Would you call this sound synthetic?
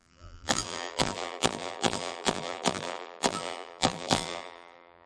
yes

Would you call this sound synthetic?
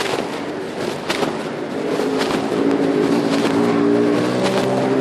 no